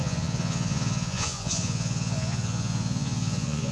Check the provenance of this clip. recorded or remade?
remade